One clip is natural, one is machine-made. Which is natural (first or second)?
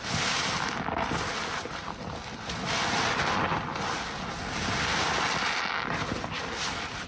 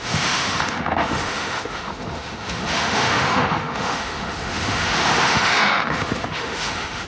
first